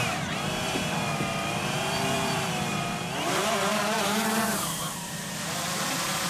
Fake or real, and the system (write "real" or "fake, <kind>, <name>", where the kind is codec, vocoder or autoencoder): fake, vocoder, BigVGAN v2